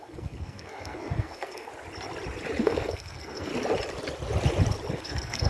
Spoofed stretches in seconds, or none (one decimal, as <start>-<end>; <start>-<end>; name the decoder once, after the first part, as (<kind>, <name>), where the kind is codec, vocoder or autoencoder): 0.0-1.7 (codec, SNAC); 2.6-3.5; 4.9-5.5